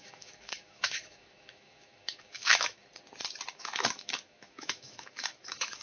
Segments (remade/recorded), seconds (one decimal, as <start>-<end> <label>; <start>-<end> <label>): 0.0-2.8 remade; 2.8-3.5 recorded; 3.5-5.8 remade